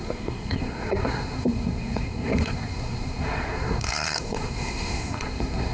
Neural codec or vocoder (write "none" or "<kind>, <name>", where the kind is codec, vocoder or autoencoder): codec, SNAC